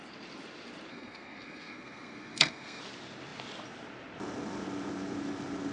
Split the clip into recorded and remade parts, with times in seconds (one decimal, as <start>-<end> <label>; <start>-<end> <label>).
0.0-0.9 recorded; 0.9-2.8 remade; 2.8-5.7 recorded

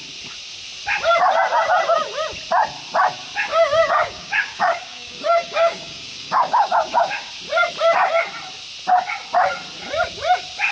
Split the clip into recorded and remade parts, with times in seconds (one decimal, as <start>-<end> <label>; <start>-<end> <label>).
0.0-3.5 recorded; 3.5-7.3 remade; 7.3-10.7 recorded